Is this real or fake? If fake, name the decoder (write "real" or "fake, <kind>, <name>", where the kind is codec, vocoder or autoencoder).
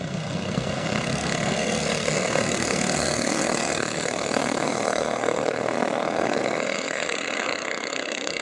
fake, codec, SNAC